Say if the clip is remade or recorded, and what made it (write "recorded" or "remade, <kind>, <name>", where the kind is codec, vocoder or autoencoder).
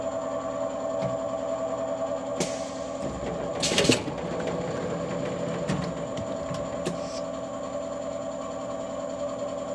recorded